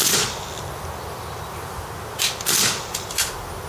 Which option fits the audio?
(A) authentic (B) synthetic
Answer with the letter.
A